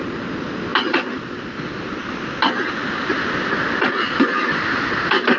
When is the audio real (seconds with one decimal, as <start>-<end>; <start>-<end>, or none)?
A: 0.0-5.4